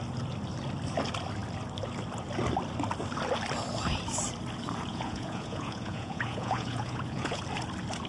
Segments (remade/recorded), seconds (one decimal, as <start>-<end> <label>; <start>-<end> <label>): 0.0-4.9 recorded; 4.9-7.4 remade; 7.4-8.1 recorded